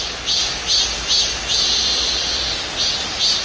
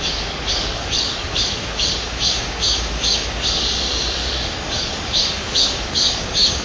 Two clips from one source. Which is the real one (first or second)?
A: first